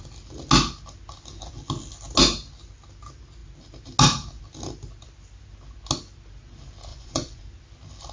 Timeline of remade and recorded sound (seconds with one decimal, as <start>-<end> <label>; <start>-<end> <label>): 0.0-6.9 recorded; 6.9-7.4 remade; 7.4-8.1 recorded